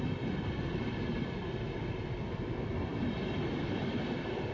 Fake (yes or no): yes